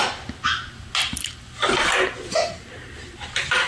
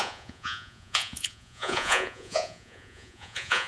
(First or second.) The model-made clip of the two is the second